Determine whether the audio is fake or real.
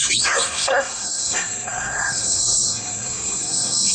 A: fake